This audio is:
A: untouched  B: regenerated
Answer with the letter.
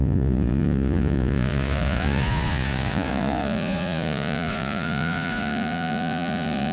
B